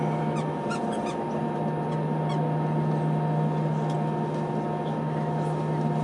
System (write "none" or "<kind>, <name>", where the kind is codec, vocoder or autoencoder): none